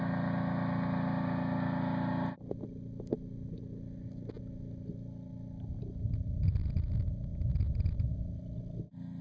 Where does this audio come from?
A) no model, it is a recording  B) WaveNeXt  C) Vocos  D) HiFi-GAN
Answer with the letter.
A